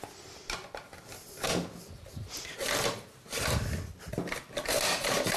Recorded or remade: recorded